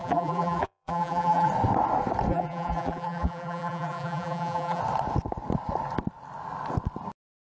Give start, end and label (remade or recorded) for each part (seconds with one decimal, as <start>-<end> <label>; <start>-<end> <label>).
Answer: 0.0-1.5 remade; 1.5-2.3 recorded; 2.3-4.8 remade; 4.8-7.6 recorded